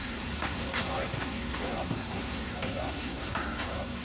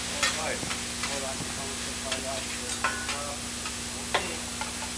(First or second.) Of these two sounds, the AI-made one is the first